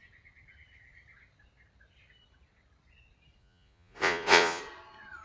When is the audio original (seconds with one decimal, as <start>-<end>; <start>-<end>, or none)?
0.0-3.4; 4.6-5.2